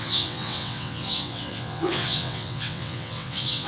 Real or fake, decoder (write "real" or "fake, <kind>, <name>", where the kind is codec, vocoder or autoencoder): fake, vocoder, WaveNeXt